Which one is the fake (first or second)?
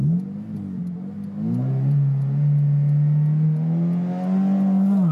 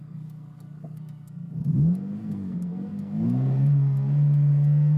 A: second